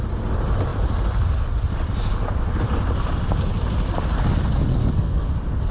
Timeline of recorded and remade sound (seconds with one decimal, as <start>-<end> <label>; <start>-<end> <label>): 0.0-4.7 recorded; 4.7-5.3 remade; 5.3-5.7 recorded